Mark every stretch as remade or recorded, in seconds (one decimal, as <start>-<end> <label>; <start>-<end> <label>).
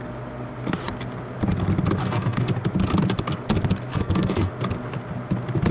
0.0-2.0 recorded; 2.0-2.5 remade; 2.5-3.9 recorded; 3.9-4.5 remade; 4.5-5.7 recorded